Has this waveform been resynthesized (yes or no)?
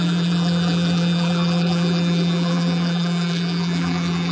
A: yes